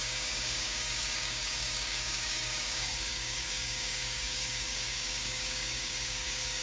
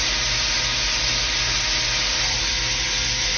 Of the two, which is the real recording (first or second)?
second